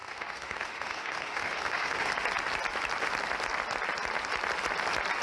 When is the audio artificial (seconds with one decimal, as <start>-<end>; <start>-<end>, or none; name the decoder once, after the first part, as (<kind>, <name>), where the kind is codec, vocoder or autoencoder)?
0.0-2.1 (autoencoder, DAC-VAE)